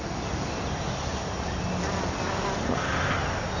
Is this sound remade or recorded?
recorded